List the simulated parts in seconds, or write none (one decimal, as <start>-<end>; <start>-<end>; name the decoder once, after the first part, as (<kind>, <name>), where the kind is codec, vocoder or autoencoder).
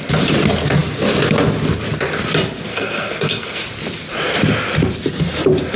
2.7-3.6 (codec, SNAC)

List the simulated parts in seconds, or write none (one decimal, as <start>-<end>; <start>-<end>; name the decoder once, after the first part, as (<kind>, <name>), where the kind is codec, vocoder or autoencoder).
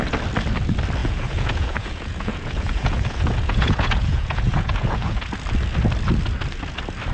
1.0-5.3 (vocoder, Vocos)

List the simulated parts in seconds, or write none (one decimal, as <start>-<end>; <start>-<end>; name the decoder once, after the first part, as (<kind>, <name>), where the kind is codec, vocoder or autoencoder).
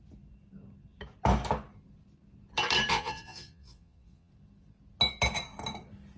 2.9-4.3 (vocoder, Vocos)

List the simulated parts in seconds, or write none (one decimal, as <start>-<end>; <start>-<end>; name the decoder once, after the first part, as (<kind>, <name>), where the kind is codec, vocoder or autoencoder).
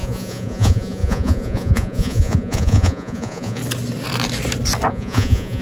0.0-3.6 (vocoder, Vocos); 4.9-5.6